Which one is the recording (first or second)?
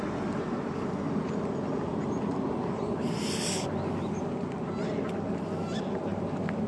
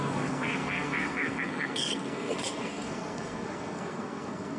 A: first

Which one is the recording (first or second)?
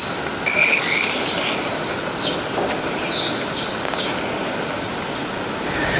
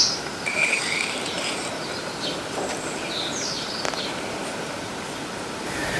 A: first